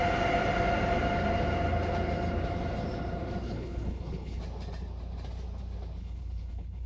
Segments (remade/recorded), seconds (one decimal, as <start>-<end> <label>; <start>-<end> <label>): 0.0-3.4 recorded; 3.4-4.4 remade; 4.4-6.0 recorded; 6.0-6.9 remade

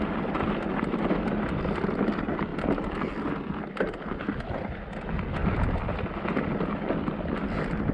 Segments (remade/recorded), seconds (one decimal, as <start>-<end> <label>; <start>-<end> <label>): 0.0-7.9 recorded

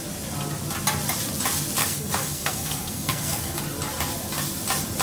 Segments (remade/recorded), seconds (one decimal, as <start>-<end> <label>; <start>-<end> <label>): 0.0-1.8 recorded; 1.8-3.6 remade; 3.6-5.0 recorded

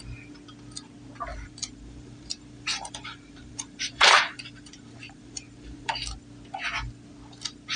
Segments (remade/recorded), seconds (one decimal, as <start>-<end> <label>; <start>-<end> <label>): 0.0-1.3 recorded; 1.3-5.9 remade; 5.9-7.8 recorded

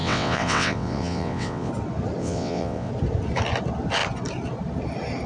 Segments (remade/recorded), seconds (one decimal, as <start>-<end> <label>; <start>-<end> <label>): 0.0-1.7 remade; 1.7-2.2 recorded; 2.2-2.9 remade; 2.9-5.3 recorded

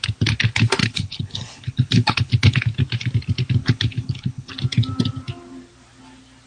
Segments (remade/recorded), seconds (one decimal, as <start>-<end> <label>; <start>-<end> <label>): 0.0-0.8 recorded; 0.8-2.6 remade; 2.6-3.6 recorded; 3.6-4.5 remade; 4.5-6.5 recorded

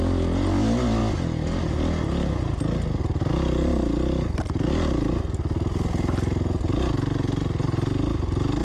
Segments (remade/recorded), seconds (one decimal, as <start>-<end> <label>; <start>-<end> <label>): 0.0-8.6 recorded

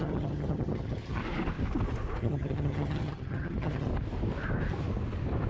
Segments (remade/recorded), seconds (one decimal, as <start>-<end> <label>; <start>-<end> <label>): 0.0-1.2 remade; 1.2-2.2 recorded; 2.2-3.9 remade; 3.9-5.5 recorded